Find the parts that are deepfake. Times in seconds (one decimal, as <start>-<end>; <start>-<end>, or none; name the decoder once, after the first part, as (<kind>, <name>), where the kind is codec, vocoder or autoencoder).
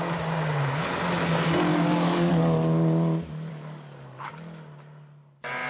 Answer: 1.7-2.3 (codec, DAC); 3.5-4.3